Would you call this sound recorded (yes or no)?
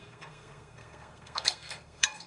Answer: no